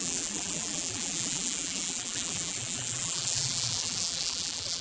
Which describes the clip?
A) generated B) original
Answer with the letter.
A